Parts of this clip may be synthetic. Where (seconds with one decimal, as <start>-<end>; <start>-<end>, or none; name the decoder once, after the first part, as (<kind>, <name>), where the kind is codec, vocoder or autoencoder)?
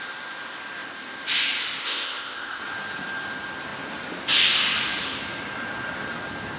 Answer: 1.8-2.6 (codec, ZipCodec)